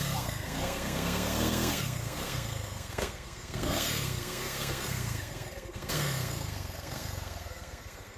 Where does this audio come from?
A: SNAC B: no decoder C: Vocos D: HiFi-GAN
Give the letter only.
A